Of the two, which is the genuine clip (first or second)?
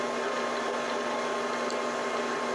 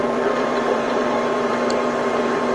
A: first